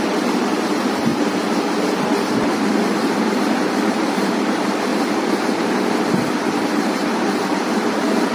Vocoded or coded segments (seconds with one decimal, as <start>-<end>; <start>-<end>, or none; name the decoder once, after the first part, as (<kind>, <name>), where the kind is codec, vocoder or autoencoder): 0.0-1.1 (vocoder, BigVGAN v2); 2.0-4.9; 6.7-8.3